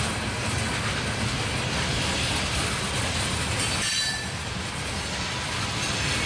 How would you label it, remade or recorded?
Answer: recorded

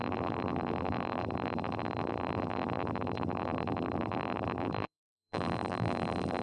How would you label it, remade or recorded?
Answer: remade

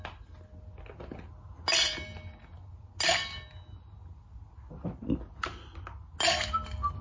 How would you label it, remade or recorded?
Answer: recorded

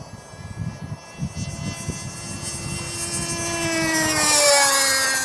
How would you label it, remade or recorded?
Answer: recorded